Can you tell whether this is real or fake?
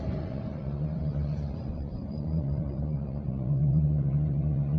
fake